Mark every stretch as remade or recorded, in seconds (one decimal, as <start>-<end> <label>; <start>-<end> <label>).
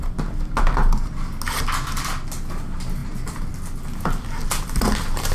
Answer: 0.0-5.3 recorded